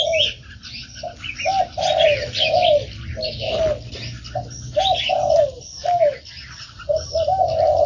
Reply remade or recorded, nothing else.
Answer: recorded